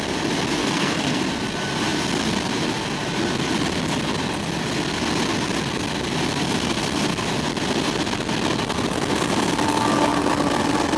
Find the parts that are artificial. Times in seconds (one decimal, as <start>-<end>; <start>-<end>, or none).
0.6-1.2